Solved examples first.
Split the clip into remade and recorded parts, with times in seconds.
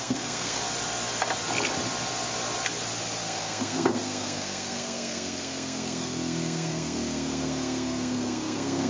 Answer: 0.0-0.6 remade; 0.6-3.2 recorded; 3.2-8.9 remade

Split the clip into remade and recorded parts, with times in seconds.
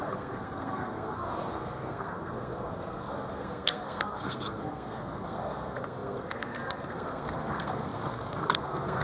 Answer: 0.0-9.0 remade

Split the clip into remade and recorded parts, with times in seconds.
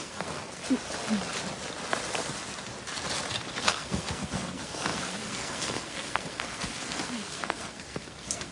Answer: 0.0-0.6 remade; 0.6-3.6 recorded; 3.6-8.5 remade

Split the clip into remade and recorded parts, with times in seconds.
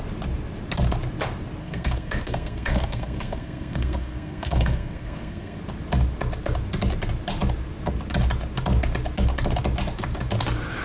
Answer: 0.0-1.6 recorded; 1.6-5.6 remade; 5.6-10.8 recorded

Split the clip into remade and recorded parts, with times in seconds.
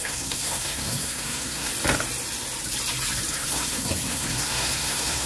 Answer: 0.0-1.7 remade; 1.7-3.3 recorded; 3.3-5.3 remade